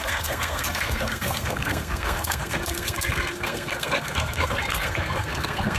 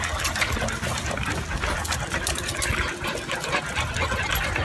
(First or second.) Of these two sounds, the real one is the second